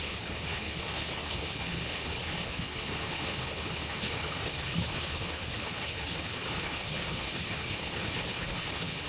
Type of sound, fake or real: fake